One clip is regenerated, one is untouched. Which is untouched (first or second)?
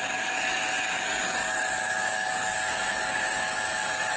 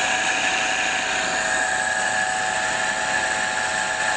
second